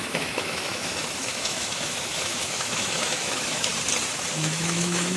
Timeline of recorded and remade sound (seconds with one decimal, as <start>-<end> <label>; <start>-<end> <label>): 0.0-3.7 remade; 3.7-4.3 recorded; 4.3-5.2 remade